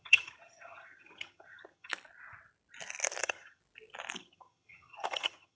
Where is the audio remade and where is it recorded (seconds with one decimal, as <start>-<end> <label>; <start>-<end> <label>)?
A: 0.0-1.9 remade; 1.9-3.2 recorded; 3.2-3.6 remade; 3.6-4.2 recorded; 4.2-5.6 remade